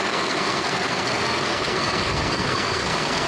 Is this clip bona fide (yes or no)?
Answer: no